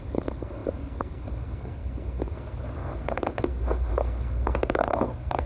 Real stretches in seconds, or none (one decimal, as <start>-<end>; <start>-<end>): none